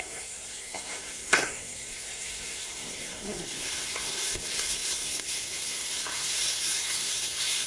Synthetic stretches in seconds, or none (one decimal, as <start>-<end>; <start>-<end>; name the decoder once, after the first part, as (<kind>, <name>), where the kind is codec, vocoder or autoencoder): 0.0-7.7 (codec, SNAC)